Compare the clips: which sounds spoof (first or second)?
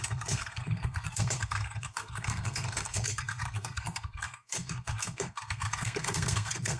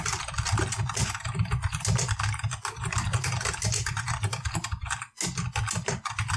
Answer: first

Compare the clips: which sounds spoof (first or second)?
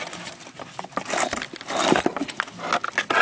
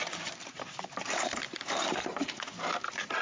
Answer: second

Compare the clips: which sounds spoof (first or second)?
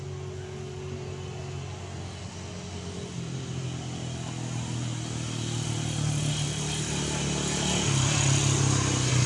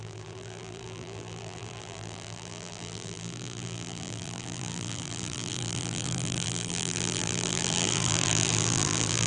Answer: second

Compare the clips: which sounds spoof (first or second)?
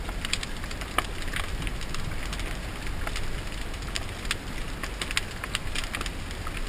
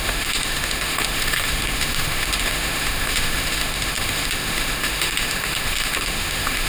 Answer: second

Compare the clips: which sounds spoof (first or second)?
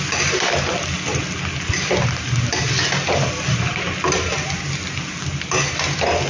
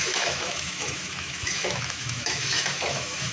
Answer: second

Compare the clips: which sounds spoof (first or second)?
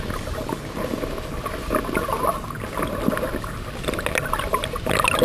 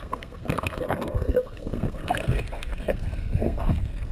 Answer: second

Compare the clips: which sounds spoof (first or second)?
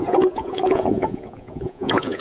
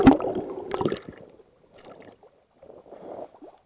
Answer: first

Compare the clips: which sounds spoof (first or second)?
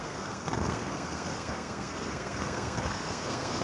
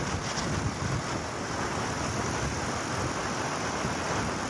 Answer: first